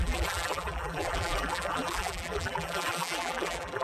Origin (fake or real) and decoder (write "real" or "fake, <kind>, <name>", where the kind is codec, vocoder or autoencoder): fake, vocoder, BigVGAN v2